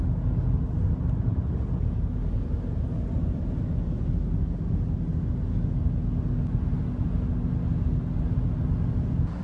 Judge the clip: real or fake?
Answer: real